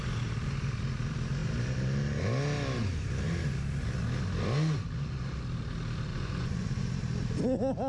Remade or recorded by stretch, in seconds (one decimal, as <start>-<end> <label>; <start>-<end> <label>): 0.0-6.1 recorded; 6.1-6.8 remade; 6.8-7.9 recorded